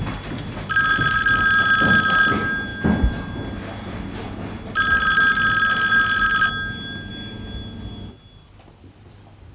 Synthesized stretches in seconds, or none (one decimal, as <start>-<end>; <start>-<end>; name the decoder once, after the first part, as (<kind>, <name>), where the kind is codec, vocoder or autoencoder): none